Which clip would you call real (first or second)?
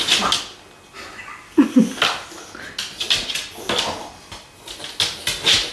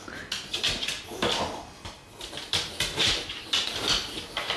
first